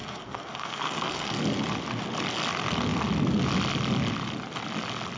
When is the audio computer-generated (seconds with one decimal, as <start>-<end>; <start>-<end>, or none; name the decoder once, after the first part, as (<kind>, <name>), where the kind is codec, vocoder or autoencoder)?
0.0-1.4 (codec, SNAC)